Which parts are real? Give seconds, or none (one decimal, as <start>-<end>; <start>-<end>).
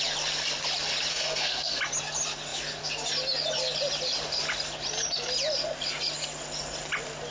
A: 0.0-1.1; 1.8-7.3